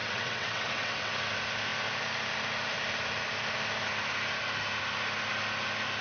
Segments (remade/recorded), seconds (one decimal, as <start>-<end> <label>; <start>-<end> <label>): 0.0-1.2 remade; 1.2-6.0 recorded